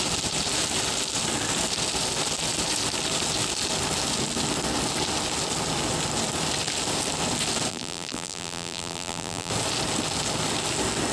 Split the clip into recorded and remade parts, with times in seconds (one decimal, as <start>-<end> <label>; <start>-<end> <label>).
0.0-7.7 recorded; 7.7-9.5 remade; 9.5-11.1 recorded